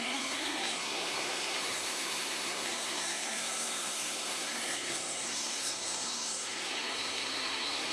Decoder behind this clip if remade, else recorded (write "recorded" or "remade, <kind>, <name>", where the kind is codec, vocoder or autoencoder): remade, codec, SNAC